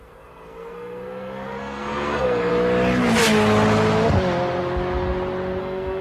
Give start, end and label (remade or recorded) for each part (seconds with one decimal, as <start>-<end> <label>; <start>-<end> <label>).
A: 0.0-2.5 remade; 2.5-5.6 recorded; 5.6-6.0 remade